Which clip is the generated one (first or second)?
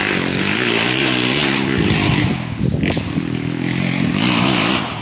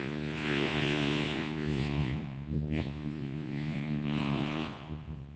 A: second